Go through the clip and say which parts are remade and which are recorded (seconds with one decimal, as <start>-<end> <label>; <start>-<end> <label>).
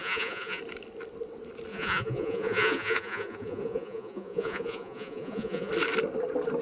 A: 0.0-0.6 remade; 0.6-1.7 recorded; 1.7-5.7 remade; 5.7-6.6 recorded